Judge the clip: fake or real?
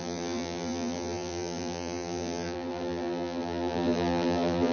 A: fake